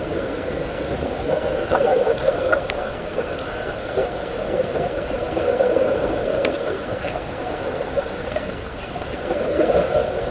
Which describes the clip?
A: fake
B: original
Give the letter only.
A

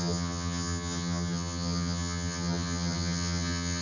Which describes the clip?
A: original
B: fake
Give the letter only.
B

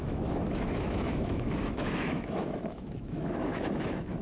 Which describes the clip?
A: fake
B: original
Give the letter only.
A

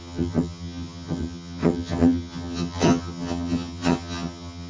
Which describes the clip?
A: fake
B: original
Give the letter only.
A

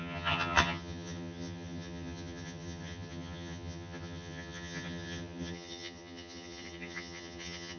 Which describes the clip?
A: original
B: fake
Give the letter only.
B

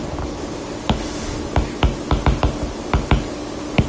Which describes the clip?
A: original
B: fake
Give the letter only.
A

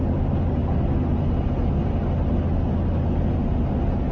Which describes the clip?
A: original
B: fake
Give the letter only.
A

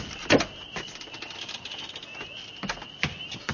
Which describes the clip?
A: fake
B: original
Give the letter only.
B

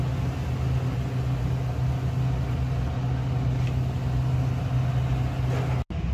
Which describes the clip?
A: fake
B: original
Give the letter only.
B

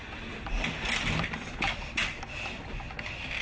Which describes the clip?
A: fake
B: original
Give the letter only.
B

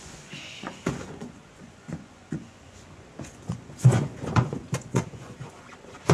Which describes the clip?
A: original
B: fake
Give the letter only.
B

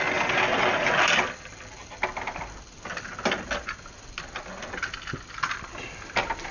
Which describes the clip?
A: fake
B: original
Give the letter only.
B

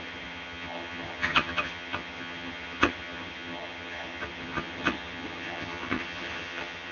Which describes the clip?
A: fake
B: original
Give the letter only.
A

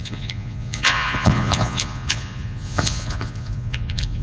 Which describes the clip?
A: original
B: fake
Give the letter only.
B